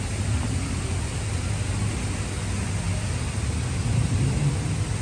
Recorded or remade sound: recorded